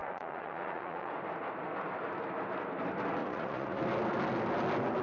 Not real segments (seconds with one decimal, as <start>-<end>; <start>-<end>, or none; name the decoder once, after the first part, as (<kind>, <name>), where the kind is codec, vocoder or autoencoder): 0.0-1.1 (vocoder, Vocos); 3.2-3.8